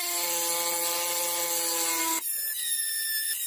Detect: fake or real real